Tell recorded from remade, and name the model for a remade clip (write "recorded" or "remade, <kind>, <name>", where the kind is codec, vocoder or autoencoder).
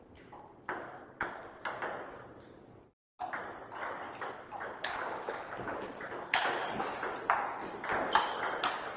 recorded